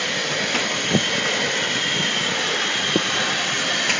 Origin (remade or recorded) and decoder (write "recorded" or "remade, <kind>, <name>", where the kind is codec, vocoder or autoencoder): recorded